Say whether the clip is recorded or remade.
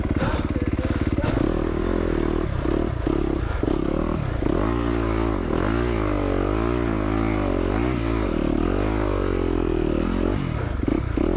recorded